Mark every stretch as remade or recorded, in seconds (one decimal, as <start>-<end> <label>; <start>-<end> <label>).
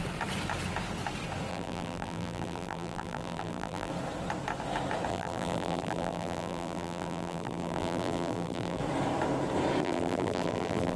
0.0-1.5 recorded; 1.5-3.9 remade; 3.9-5.1 recorded; 5.1-8.8 remade; 8.8-9.8 recorded; 9.8-11.0 remade